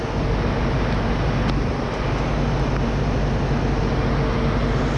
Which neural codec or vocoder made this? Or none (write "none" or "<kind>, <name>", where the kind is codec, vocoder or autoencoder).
none